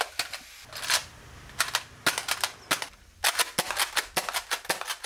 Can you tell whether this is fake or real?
real